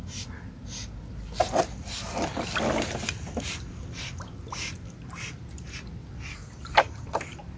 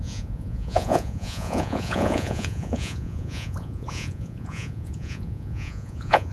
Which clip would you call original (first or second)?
first